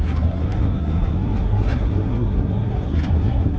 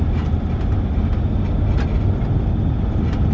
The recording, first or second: second